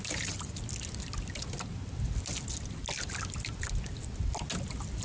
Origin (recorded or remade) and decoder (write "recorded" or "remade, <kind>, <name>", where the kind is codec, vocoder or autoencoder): recorded